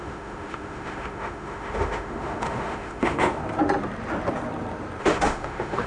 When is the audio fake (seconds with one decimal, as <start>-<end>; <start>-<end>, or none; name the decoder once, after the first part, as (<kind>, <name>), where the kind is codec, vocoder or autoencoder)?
0.0-3.4 (autoencoder, DAC-VAE); 5.0-5.9